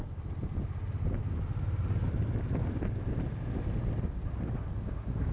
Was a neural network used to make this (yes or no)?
no